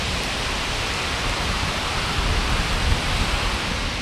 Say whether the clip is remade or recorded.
recorded